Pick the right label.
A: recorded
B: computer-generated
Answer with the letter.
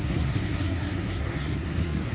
B